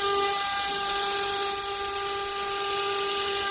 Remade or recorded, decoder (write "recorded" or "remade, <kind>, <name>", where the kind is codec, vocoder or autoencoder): recorded